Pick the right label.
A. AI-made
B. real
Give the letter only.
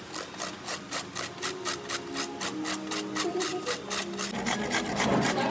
B